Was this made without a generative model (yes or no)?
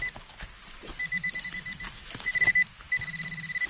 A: yes